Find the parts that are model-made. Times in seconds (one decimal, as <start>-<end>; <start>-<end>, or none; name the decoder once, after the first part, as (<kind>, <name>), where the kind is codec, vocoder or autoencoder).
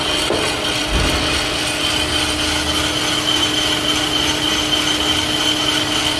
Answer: none